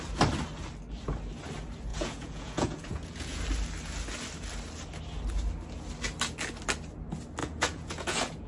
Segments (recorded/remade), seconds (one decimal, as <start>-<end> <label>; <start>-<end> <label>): 0.0-1.9 recorded; 1.9-3.4 remade; 3.4-7.4 recorded; 7.4-8.5 remade